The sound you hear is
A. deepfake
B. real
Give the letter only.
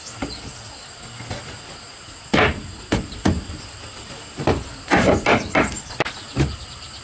B